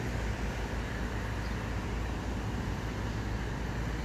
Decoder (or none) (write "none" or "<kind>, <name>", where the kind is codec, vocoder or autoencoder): none